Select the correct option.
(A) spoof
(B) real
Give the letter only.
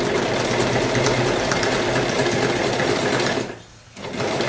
B